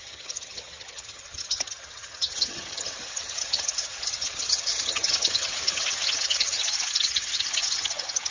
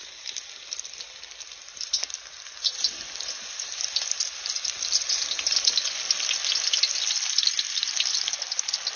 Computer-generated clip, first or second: first